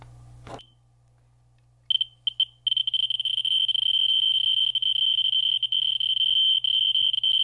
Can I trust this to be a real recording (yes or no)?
yes